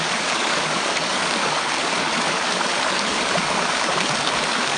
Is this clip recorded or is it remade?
remade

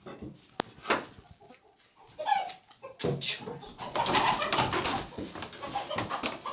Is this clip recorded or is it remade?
recorded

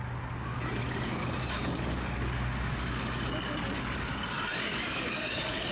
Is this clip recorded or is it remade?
remade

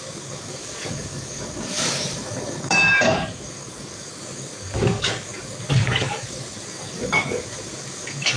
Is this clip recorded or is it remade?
remade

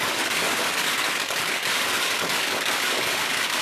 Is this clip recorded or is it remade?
remade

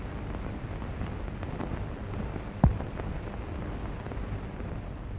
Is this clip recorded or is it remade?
recorded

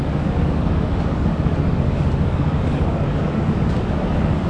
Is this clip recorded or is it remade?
remade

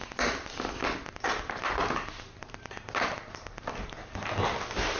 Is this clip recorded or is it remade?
recorded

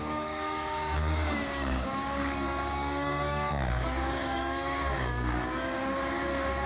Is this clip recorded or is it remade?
remade